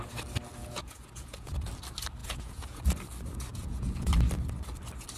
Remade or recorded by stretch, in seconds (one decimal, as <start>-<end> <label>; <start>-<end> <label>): 0.0-0.6 recorded; 0.6-1.7 remade; 1.7-2.2 recorded; 2.2-2.8 remade; 2.8-3.5 recorded; 3.5-4.1 remade; 4.1-5.2 recorded